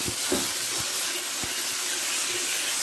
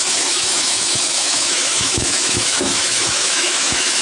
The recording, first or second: first